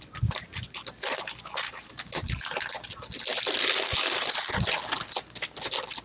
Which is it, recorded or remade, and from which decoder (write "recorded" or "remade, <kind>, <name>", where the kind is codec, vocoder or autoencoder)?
recorded